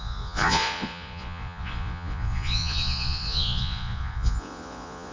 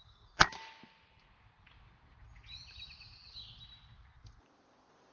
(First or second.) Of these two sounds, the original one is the second